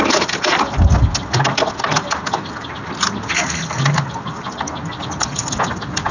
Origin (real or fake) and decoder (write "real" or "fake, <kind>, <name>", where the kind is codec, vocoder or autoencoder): real